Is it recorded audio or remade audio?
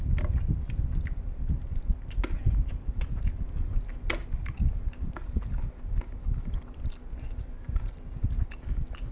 recorded